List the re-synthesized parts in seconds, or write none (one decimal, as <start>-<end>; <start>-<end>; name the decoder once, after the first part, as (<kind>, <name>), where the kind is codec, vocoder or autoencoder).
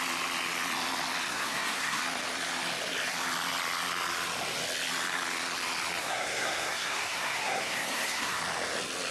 1.3-2.0 (codec, SNAC); 6.0-8.4